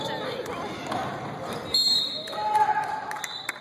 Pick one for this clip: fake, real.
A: real